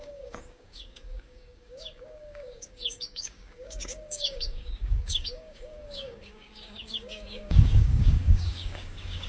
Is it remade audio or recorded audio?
remade